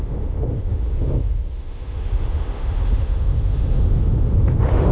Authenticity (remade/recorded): remade